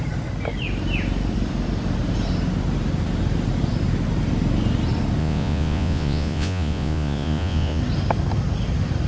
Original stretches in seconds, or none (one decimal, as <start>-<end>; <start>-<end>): 0.0-5.2; 7.8-9.1